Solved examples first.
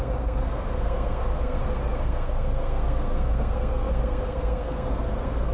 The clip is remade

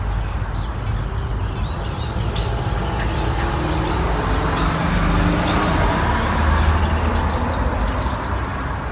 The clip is recorded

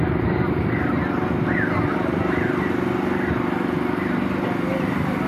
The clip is recorded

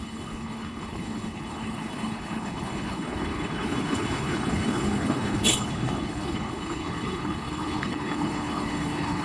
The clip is remade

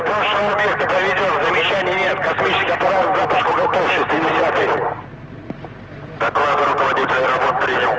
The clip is recorded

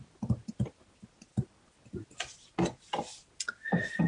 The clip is recorded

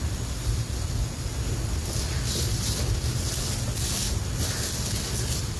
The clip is recorded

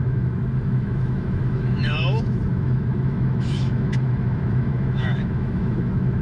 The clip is remade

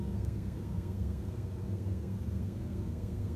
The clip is remade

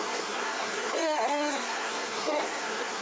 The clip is remade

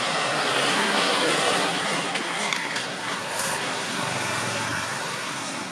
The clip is remade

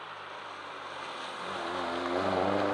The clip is recorded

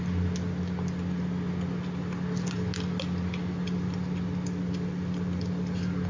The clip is recorded